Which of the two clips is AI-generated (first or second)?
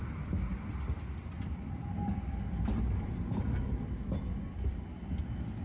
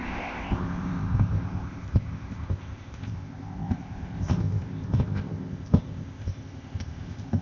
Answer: second